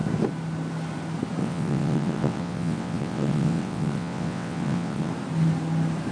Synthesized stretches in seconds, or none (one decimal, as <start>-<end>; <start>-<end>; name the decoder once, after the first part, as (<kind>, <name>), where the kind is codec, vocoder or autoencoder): 1.4-5.1 (vocoder, WaveNeXt)

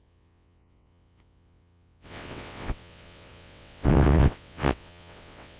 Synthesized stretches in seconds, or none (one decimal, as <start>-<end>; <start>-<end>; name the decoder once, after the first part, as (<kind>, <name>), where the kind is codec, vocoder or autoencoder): 0.0-5.6 (vocoder, WaveNeXt)

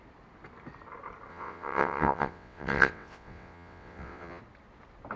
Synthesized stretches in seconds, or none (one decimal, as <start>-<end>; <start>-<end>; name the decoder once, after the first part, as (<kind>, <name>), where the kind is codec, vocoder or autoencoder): 1.3-4.4 (vocoder, WaveNeXt)

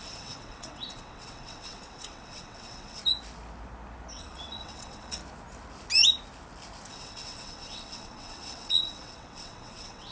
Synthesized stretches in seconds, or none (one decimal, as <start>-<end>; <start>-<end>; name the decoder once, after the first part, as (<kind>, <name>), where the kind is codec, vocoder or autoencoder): 0.0-3.0 (vocoder, WaveNeXt); 4.1-5.2; 6.9-10.1

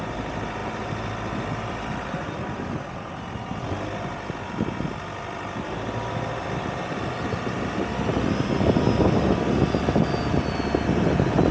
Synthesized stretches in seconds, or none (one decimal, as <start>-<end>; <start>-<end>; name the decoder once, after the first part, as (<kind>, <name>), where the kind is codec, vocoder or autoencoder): none